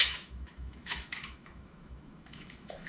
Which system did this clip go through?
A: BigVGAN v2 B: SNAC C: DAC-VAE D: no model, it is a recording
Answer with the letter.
C